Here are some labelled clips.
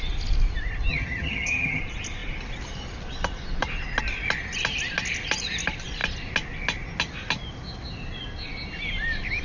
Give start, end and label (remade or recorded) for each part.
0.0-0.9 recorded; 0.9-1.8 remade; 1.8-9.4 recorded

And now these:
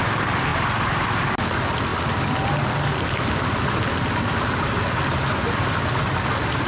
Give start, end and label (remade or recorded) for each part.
0.0-6.7 recorded

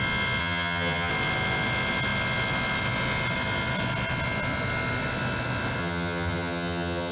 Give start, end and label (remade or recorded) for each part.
0.0-0.4 recorded; 0.4-1.1 remade; 1.1-5.8 recorded; 5.8-7.1 remade

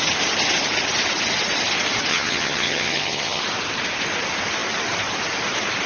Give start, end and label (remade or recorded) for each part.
0.0-2.1 recorded; 2.1-3.4 remade; 3.4-5.9 recorded